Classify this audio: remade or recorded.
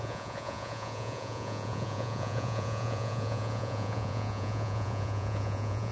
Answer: remade